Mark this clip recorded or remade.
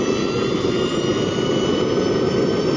remade